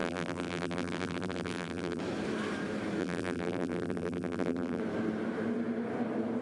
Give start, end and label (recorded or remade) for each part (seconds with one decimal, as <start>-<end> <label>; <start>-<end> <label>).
0.0-2.0 remade; 2.0-3.0 recorded; 3.0-4.8 remade; 4.8-6.4 recorded